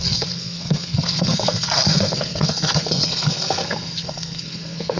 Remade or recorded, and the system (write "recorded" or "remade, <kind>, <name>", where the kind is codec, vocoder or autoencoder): remade, codec, SNAC